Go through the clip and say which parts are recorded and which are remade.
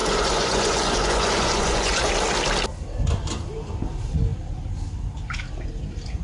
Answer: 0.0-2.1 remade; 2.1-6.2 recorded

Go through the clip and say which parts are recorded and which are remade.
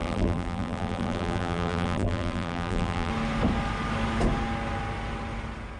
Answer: 0.0-3.1 remade; 3.1-5.8 recorded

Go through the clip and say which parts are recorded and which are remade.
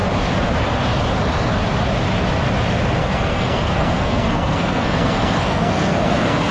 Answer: 0.0-3.0 recorded; 3.0-6.5 remade